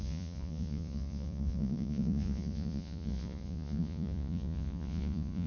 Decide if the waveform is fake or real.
fake